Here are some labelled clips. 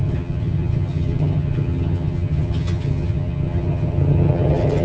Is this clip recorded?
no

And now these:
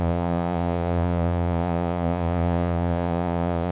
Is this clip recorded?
no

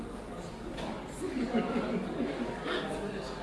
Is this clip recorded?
no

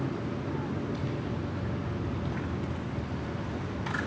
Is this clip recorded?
yes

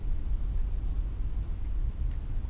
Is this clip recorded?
yes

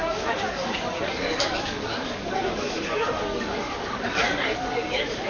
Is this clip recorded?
no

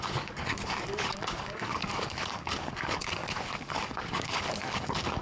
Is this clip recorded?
no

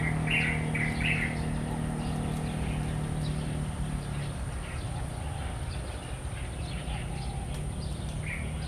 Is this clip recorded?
yes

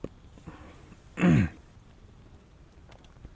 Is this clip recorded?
yes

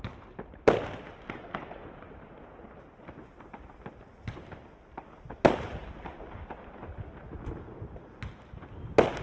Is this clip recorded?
yes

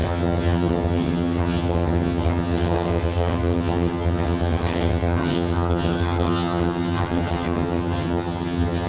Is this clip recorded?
no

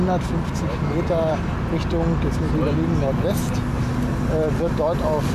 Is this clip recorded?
yes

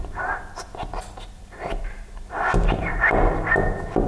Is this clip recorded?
yes